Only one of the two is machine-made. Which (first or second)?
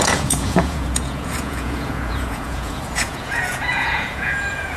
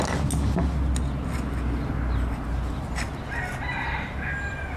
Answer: first